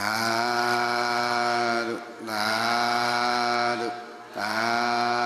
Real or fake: real